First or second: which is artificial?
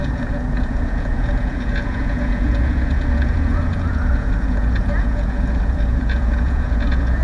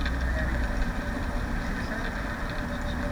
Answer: first